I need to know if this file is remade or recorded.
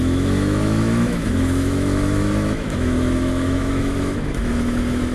remade